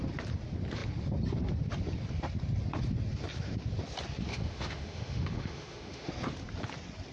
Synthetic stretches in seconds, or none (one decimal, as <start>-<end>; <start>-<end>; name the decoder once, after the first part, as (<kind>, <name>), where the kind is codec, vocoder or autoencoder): 4.3-6.1 (autoencoder, DAC-VAE)